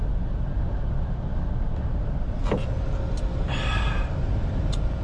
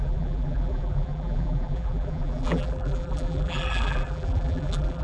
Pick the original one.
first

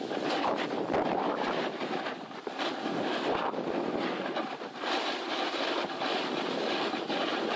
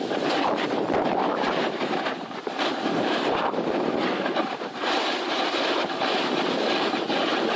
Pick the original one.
first